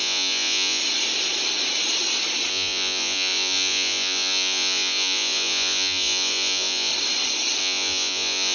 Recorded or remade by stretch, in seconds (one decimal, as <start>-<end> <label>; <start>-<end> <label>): 0.0-0.8 remade; 0.8-2.5 recorded; 2.5-6.9 remade; 6.9-7.6 recorded; 7.6-8.5 remade